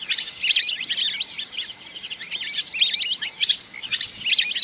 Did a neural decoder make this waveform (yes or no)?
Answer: no